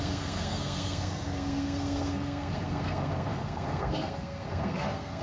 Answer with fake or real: fake